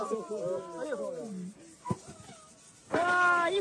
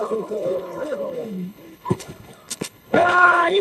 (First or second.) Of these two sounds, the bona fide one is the first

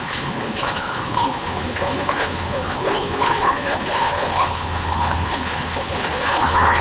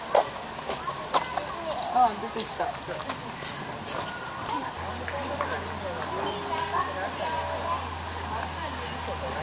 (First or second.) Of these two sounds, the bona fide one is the second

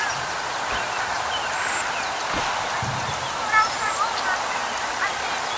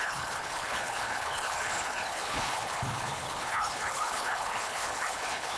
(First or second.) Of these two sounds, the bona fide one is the first